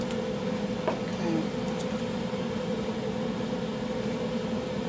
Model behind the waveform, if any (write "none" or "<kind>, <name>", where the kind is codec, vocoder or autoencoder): none